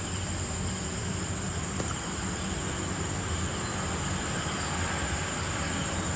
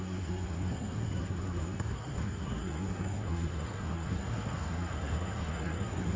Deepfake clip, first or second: second